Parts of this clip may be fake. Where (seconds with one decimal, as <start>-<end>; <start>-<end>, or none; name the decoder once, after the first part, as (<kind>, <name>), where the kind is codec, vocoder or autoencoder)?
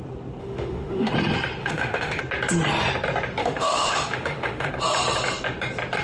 0.4-1.1 (autoencoder, DAC-VAE); 1.6-2.2; 3.4-4.7